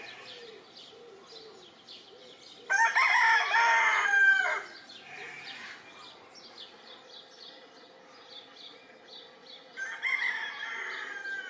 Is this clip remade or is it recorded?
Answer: recorded